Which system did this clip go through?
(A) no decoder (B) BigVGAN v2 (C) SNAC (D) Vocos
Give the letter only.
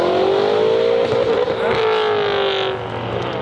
A